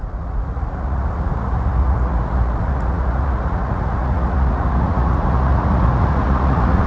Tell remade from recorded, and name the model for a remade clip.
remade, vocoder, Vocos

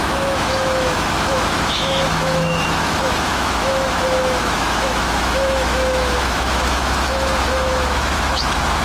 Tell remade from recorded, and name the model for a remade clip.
remade, autoencoder, DAC-VAE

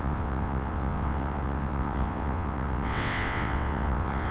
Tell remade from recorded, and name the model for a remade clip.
remade, vocoder, WaveNeXt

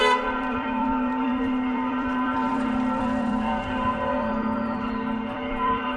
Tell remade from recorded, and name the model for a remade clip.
remade, vocoder, BigVGAN v2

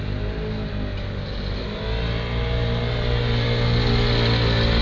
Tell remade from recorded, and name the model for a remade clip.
recorded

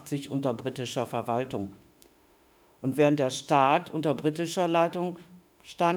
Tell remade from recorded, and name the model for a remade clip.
remade, autoencoder, DAC-VAE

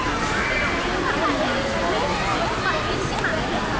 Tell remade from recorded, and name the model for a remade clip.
recorded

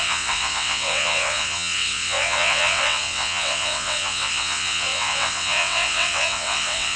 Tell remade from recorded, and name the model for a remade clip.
remade, vocoder, WaveNeXt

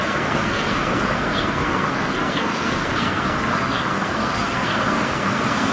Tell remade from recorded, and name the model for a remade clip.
remade, codec, SNAC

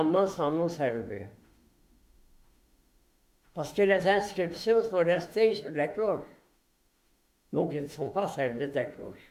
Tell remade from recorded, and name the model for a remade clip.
remade, autoencoder, DAC-VAE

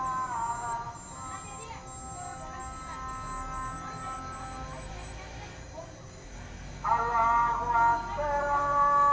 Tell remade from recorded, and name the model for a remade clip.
recorded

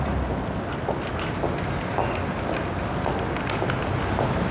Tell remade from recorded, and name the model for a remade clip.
recorded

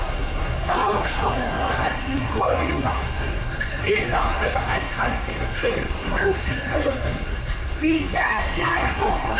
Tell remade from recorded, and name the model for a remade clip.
remade, codec, SNAC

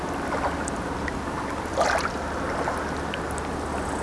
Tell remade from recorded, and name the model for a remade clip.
recorded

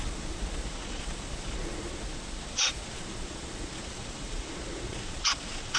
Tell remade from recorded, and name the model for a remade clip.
remade, vocoder, Vocos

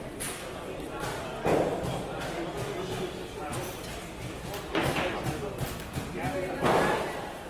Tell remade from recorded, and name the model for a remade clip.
recorded